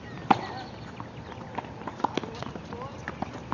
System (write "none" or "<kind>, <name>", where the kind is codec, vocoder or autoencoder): none